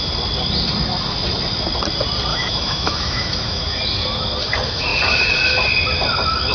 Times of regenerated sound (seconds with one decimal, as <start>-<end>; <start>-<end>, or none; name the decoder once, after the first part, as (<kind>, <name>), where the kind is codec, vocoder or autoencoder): 2.3-3.8 (autoencoder, DAC-VAE)